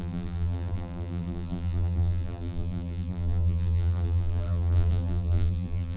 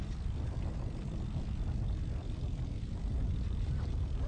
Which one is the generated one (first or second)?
first